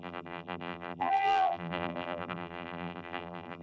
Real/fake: fake